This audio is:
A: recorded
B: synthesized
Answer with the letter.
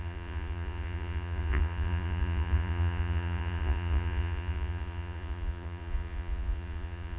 B